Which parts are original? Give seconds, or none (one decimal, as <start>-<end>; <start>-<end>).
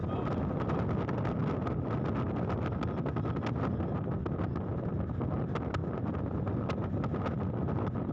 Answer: 0.0-8.1